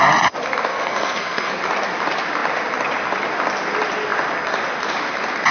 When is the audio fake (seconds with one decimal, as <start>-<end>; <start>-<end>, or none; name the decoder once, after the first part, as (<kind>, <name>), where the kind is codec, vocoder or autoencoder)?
0.7-1.5 (codec, SNAC)